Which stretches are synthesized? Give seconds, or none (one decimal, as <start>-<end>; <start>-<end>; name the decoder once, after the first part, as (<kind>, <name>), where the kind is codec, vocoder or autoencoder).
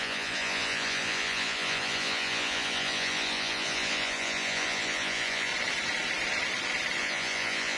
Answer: 0.0-5.5 (vocoder, Vocos); 7.0-7.8